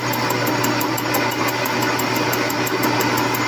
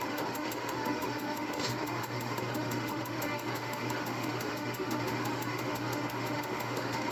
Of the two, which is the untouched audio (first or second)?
first